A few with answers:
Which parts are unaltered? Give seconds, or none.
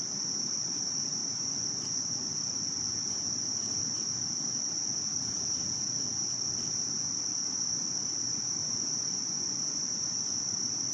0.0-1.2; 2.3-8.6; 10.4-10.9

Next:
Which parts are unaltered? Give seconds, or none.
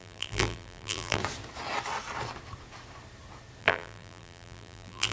1.2-3.6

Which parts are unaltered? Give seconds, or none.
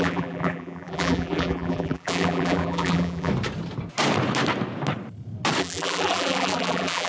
3.3-5.6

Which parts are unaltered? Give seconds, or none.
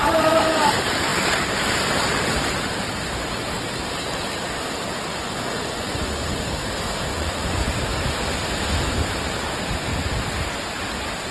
0.0-5.1; 6.4-7.1; 7.7-11.3